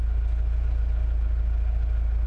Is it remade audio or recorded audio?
recorded